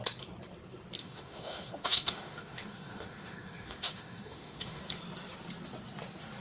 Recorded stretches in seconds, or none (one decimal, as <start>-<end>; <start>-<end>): 0.0-1.0; 4.8-6.4